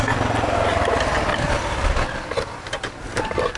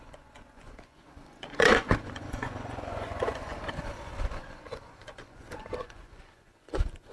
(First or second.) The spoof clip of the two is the second